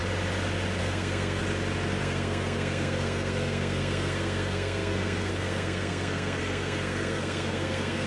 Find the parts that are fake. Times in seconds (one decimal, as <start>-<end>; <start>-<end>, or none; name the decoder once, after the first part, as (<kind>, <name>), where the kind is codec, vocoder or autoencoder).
0.8-1.4 (codec, SNAC); 2.0-8.1